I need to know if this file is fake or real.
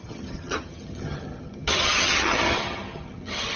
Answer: fake